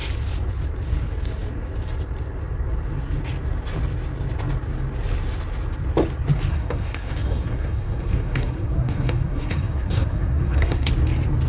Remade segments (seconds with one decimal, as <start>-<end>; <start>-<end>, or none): 6.5-10.9